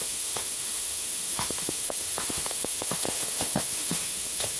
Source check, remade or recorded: remade